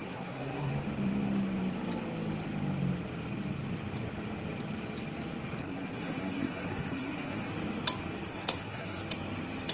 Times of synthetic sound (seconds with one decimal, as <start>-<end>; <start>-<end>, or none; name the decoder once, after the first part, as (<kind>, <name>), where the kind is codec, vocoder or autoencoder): 0.0-0.7 (codec, SNAC); 5.6-7.5; 8.3-9.0